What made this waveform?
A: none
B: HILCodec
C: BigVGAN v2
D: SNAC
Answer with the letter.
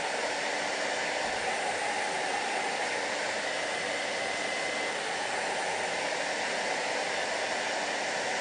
C